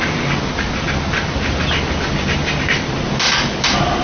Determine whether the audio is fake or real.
real